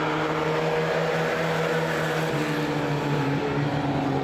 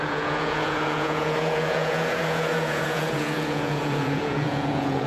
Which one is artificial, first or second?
second